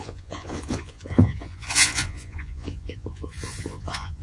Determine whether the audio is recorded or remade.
remade